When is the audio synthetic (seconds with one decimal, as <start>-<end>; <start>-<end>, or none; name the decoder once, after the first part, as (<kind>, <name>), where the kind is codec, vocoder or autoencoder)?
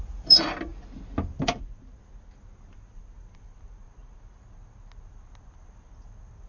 none